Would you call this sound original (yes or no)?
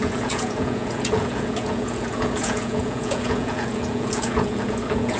no